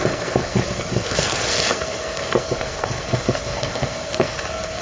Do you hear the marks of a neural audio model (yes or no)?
yes